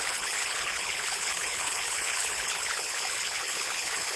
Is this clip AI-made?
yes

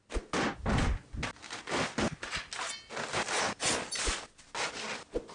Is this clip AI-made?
no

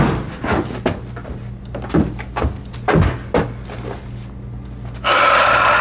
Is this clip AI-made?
no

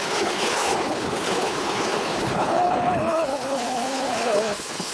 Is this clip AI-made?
yes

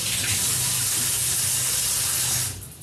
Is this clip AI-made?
no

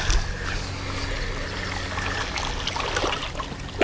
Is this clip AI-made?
no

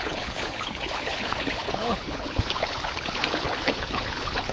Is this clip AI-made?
yes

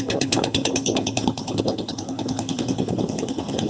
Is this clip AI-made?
yes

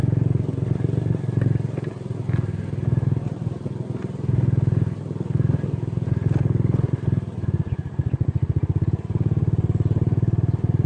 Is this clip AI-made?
no